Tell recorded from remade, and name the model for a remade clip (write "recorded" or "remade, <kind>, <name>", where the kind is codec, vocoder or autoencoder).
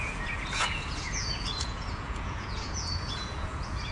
remade, vocoder, Vocos